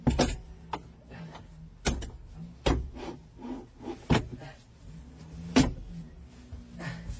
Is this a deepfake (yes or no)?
no